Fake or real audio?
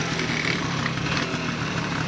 real